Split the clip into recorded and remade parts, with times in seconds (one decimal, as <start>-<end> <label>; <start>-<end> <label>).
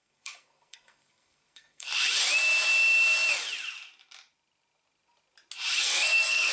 0.0-1.9 remade; 1.9-5.8 recorded; 5.8-6.5 remade